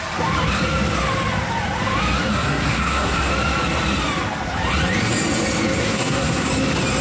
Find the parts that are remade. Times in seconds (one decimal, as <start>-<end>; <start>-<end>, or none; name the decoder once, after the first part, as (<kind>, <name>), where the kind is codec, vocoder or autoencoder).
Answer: 2.3-3.3 (codec, SNAC); 5.8-6.5